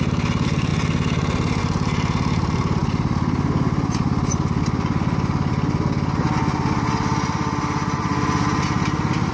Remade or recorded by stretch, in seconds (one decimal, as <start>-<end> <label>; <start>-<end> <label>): 0.0-9.3 recorded